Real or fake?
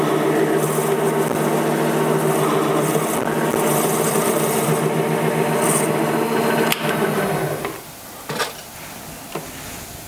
real